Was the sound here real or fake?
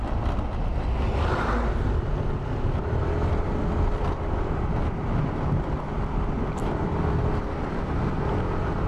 real